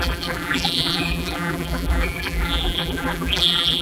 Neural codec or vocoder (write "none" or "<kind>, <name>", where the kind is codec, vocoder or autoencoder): vocoder, BigVGAN v2